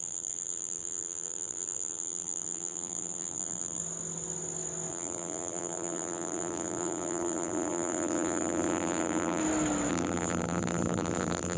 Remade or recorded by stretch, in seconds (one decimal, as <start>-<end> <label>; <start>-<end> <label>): 0.0-3.8 remade; 3.8-4.9 recorded; 4.9-9.4 remade; 9.4-9.9 recorded; 9.9-11.6 remade